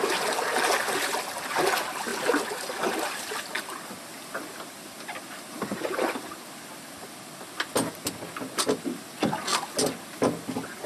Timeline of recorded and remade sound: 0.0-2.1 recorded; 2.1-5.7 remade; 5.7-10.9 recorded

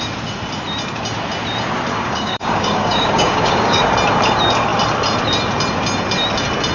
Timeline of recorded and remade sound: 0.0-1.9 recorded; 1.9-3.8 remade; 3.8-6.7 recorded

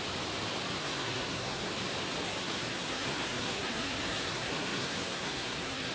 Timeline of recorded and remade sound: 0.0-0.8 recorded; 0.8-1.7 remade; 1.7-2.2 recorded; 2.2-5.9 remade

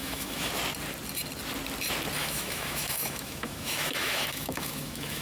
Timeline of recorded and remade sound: 0.0-0.5 remade; 0.5-2.2 recorded; 2.2-5.2 remade

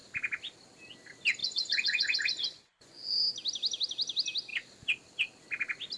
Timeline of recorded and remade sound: 0.0-1.4 recorded; 1.4-3.2 remade; 3.2-6.0 recorded

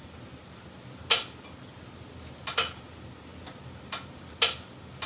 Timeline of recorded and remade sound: 0.0-5.1 recorded